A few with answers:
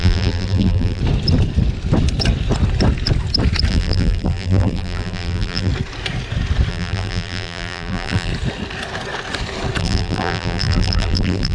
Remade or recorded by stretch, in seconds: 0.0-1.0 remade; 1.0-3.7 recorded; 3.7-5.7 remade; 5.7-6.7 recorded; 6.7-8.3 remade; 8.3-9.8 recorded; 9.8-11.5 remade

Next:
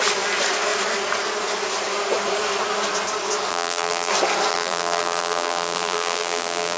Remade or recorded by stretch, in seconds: 0.0-3.5 recorded; 3.5-4.1 remade; 4.1-4.5 recorded; 4.5-6.8 remade